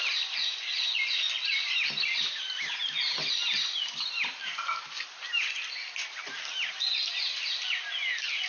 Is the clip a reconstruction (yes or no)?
no